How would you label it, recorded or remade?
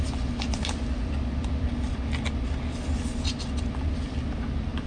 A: recorded